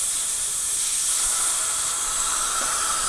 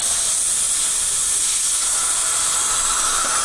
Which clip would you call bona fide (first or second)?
second